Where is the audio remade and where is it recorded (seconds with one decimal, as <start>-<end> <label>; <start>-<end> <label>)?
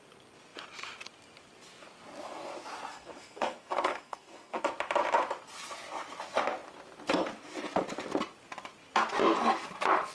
0.0-2.9 recorded; 2.9-4.6 remade; 4.6-10.1 recorded